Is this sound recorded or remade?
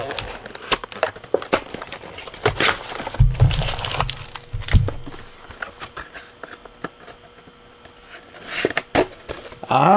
recorded